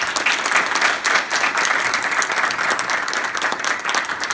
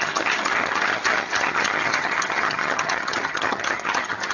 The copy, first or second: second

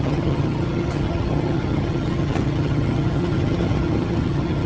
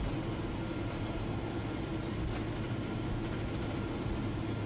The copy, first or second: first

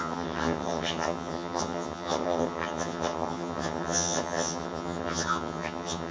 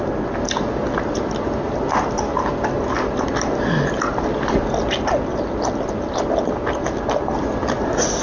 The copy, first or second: first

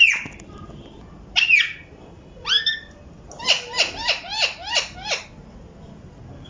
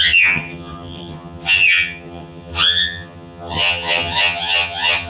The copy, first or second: second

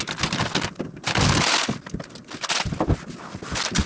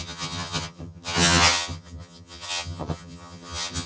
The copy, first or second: second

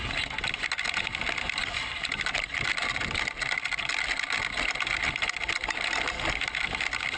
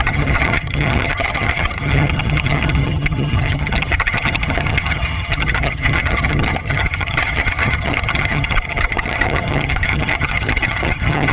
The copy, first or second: second